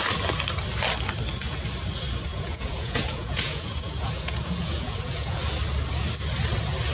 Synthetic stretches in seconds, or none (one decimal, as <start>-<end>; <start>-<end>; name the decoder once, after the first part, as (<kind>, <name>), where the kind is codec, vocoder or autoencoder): 2.3-5.4 (vocoder, Vocos)

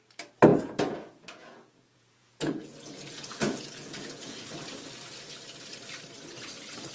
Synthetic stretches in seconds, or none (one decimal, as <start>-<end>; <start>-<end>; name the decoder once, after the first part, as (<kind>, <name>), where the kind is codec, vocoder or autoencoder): 0.5-4.5 (vocoder, Vocos)